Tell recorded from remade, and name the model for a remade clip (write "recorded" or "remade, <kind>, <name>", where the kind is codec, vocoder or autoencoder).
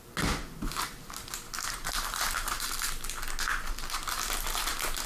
recorded